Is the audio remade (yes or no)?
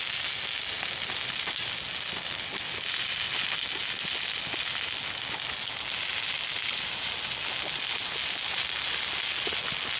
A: no